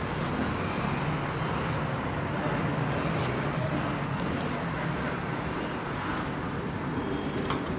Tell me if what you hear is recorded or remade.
recorded